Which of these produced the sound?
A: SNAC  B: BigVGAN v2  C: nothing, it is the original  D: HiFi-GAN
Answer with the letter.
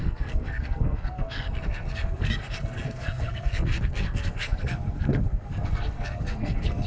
A